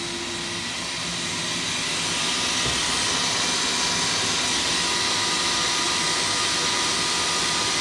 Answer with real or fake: real